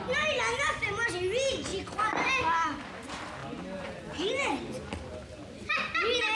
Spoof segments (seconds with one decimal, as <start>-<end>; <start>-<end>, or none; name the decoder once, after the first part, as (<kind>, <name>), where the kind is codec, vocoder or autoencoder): none